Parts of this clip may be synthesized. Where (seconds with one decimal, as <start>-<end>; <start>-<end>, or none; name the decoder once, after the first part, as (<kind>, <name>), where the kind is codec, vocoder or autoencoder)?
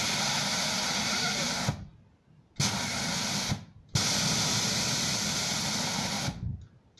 none